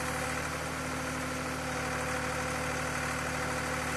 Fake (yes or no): no